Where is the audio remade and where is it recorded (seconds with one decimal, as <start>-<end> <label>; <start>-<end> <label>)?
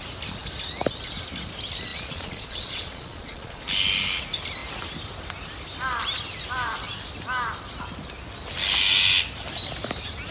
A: 0.0-1.9 recorded; 1.9-3.6 remade; 3.6-10.3 recorded